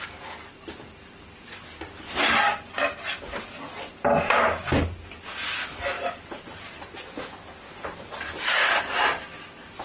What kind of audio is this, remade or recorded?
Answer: recorded